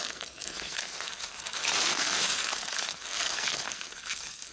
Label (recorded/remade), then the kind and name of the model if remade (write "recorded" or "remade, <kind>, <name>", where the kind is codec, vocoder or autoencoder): remade, codec, SNAC